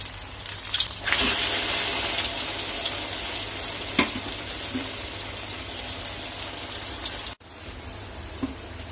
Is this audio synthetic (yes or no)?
no